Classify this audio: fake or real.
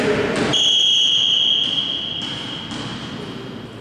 real